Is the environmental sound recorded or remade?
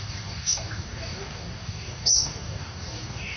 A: remade